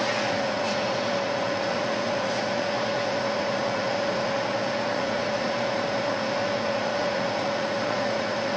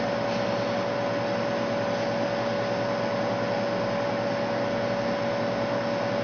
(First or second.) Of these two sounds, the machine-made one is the first